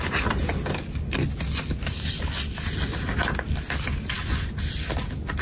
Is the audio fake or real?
real